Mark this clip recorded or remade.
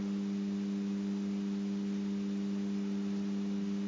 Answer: recorded